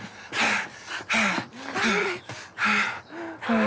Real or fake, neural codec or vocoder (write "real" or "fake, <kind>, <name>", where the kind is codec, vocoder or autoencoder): real